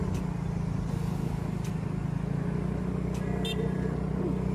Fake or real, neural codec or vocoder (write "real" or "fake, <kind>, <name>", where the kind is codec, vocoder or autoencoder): real